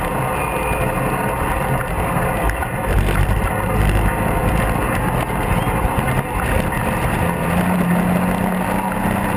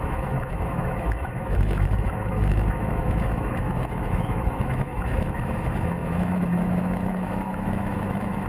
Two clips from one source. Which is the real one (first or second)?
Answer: first